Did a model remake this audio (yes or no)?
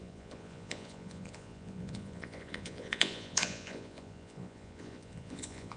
yes